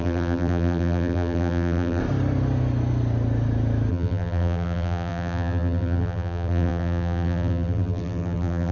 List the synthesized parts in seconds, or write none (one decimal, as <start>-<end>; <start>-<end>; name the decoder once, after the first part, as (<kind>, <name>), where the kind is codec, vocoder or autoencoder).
0.0-2.0 (vocoder, BigVGAN v2); 3.9-8.7

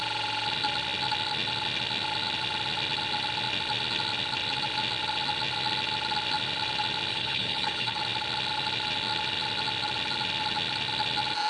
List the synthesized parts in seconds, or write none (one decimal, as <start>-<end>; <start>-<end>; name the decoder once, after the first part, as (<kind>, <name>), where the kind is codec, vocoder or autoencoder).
7.1-8.0 (codec, HILCodec)

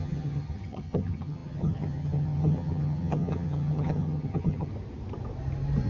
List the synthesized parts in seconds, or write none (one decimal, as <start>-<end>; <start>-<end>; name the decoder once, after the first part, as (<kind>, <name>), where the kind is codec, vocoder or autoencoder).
0.0-4.7 (vocoder, HiFi-GAN)

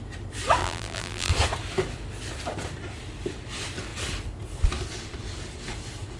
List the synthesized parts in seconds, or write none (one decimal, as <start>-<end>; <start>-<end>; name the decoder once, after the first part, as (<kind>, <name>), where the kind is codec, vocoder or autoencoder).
0.6-1.3 (vocoder, BigVGAN v2)

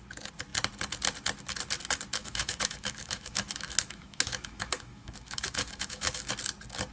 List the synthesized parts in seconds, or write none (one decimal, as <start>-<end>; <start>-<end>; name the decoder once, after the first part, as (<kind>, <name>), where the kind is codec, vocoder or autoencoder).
2.2-6.3 (autoencoder, DAC-VAE)